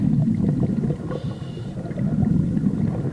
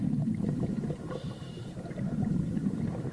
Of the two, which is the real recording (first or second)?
first